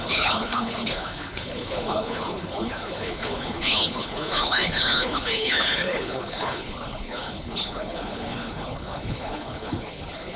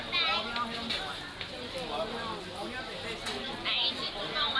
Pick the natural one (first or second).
second